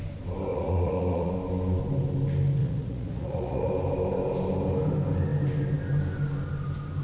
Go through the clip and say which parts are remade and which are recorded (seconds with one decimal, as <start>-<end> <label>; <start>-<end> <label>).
0.0-0.5 recorded; 0.5-1.3 remade; 1.3-2.6 recorded; 2.6-3.7 remade; 3.7-7.0 recorded